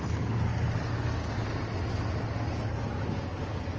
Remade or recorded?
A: recorded